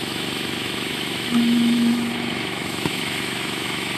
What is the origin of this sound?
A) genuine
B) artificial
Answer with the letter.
B